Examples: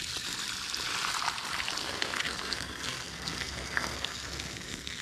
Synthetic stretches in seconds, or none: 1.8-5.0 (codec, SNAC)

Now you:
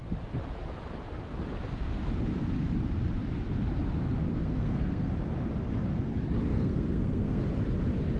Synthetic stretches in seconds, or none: 4.3-5.1 (codec, SNAC); 6.5-7.4

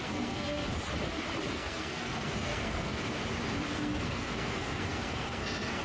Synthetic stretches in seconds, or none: 0.0-0.7 (codec, SNAC); 1.5-3.2; 3.7-5.8

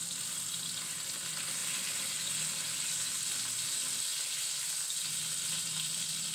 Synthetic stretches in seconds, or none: none

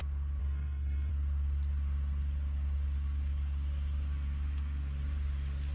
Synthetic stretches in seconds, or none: 0.4-1.1 (codec, SNAC)

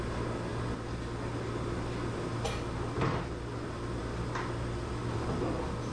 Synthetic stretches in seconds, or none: none

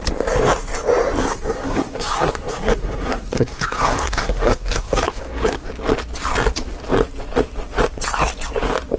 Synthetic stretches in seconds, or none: 1.2-5.7 (codec, SNAC)

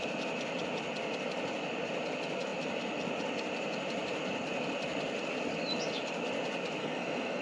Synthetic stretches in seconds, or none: 6.8-7.4 (codec, SNAC)